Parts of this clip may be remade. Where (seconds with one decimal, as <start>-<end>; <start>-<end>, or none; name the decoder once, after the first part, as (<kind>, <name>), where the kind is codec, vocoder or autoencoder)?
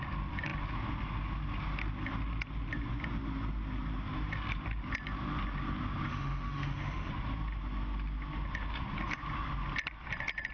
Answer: 6.1-7.1 (autoencoder, DAC-VAE)